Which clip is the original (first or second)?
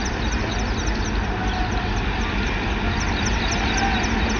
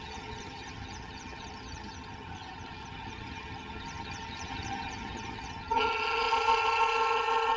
first